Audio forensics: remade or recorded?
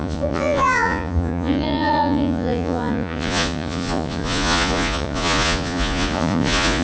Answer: remade